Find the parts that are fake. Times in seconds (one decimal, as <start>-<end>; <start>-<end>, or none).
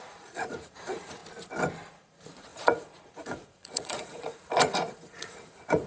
0.0-1.2; 1.9-5.9